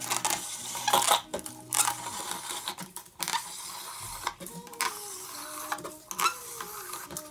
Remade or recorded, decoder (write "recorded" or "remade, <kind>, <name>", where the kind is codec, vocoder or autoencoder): recorded